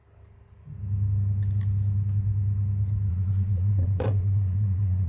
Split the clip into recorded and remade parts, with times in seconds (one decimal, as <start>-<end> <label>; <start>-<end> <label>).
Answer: 0.0-3.1 recorded; 3.1-5.1 remade